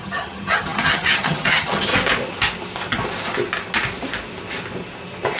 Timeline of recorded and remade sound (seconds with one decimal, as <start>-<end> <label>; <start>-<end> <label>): 0.0-1.9 remade; 1.9-5.4 recorded